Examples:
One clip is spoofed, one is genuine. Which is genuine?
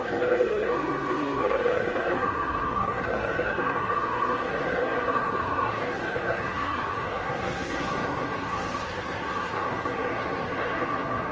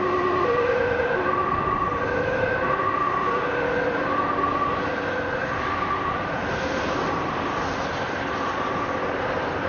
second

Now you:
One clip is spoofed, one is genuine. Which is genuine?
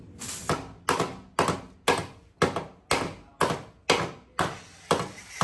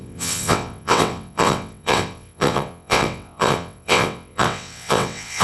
first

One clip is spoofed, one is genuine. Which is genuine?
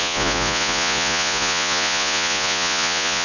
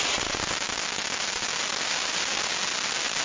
second